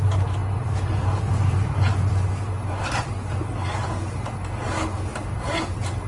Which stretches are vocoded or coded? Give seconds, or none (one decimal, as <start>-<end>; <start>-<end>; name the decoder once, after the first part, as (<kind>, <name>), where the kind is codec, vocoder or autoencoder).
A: 0.4-4.0 (vocoder, BigVGAN v2)